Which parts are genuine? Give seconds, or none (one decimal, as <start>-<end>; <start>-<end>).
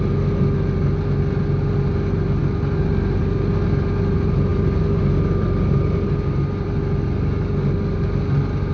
0.0-8.7